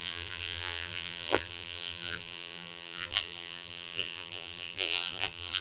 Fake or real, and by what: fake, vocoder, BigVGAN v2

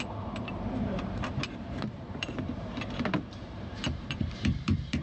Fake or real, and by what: fake, vocoder, BigVGAN v2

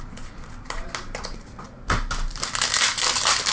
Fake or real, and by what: real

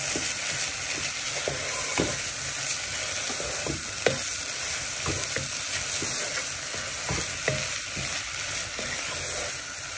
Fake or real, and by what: real